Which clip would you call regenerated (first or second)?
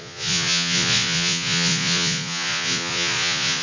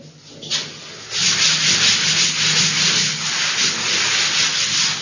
first